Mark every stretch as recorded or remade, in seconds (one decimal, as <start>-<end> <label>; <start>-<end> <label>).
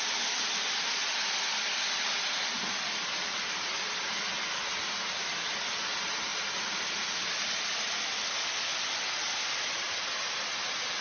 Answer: 0.0-11.0 recorded